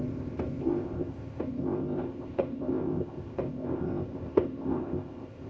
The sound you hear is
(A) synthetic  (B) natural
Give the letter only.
A